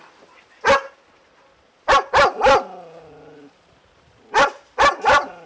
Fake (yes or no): no